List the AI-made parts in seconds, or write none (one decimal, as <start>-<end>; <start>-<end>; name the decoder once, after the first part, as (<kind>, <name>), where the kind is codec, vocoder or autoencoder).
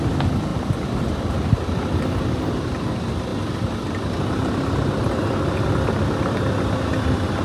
0.5-1.5 (vocoder, BigVGAN v2)